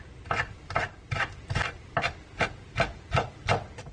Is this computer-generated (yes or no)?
no